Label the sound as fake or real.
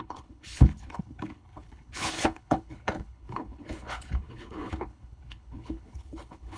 fake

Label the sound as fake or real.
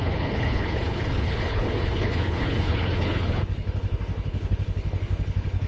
fake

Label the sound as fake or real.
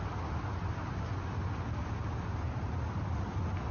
real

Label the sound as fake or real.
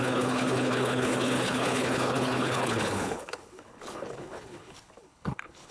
fake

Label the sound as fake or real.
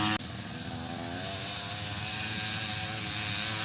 real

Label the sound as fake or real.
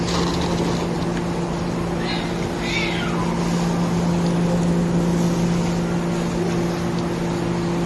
real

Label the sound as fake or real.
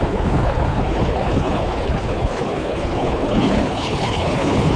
fake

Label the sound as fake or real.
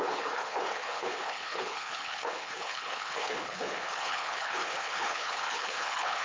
fake